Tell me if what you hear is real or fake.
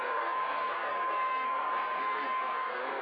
fake